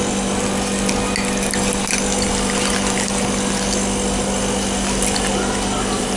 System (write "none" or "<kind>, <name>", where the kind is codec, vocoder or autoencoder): none